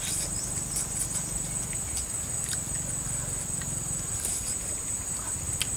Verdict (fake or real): real